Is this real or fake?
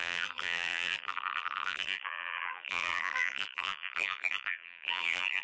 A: fake